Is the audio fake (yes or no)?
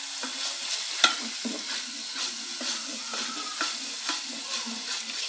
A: no